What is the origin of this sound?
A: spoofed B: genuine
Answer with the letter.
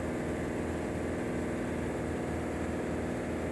B